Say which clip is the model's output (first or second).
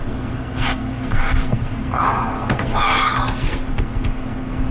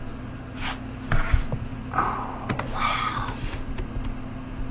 first